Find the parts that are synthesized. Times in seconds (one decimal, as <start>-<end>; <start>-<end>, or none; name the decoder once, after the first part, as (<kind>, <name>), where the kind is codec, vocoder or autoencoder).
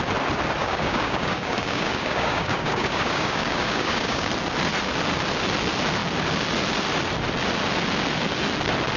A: 0.6-4.3 (codec, DAC)